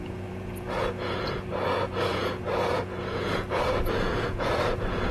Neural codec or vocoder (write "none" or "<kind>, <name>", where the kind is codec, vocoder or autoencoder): vocoder, Vocos